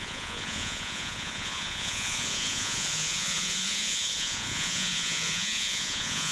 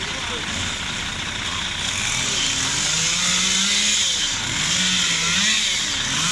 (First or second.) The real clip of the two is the second